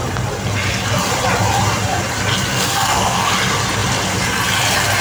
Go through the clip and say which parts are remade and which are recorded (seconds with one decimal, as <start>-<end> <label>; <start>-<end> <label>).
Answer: 0.0-2.5 recorded; 2.5-3.3 remade; 3.3-5.0 recorded